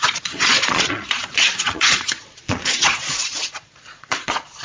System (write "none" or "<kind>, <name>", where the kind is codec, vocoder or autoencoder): vocoder, Vocos